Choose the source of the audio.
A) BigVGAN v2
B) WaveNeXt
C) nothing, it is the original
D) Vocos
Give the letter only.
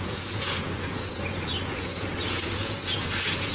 D